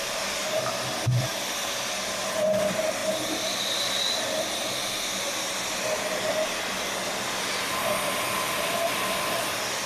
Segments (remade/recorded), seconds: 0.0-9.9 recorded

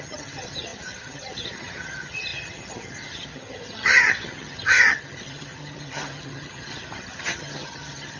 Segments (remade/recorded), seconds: 0.0-8.2 remade

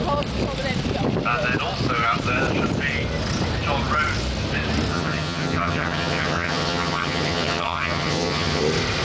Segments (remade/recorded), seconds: 0.0-4.9 recorded; 4.9-8.6 remade; 8.6-9.0 recorded

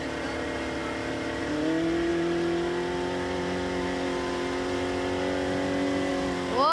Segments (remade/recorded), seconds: 0.0-6.7 recorded

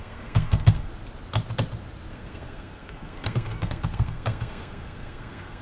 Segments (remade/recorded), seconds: 0.0-0.9 remade; 0.9-2.1 recorded; 2.1-5.6 remade